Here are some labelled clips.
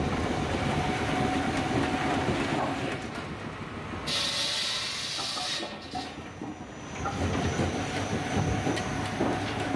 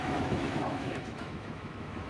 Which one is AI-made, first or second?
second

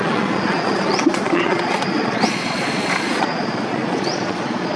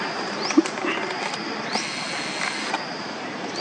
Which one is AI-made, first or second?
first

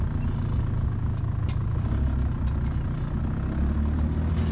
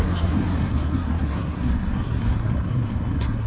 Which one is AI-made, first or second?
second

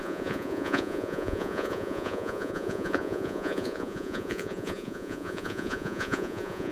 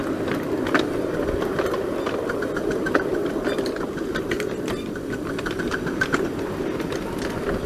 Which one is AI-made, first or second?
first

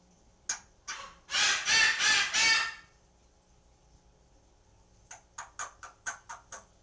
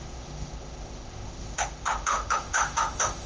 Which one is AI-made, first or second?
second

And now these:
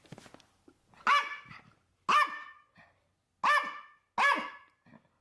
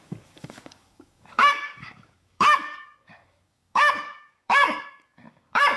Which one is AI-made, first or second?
second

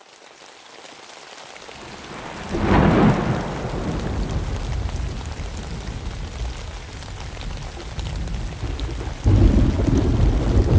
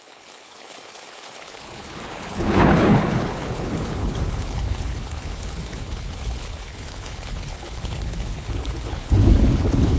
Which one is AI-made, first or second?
second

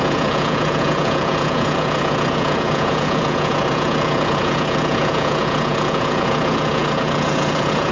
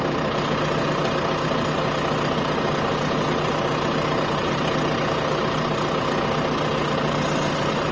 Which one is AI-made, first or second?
first